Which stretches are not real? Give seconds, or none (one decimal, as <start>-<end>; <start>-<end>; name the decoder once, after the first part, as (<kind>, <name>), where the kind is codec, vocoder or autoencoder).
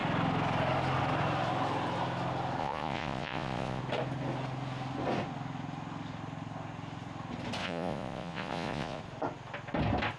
2.6-3.8 (vocoder, Vocos); 7.6-9.0